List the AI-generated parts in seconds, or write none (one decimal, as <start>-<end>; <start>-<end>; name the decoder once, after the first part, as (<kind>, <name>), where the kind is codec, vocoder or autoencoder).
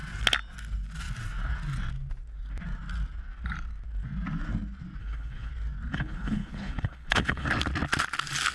5.0-5.5 (codec, HILCodec); 5.9-7.5